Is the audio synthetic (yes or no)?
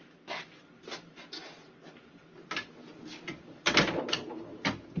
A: no